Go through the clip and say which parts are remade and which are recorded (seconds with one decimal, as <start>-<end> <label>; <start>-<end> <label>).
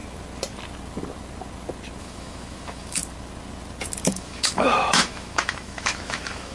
0.0-2.0 recorded; 2.0-3.0 remade; 3.0-4.1 recorded; 4.1-6.5 remade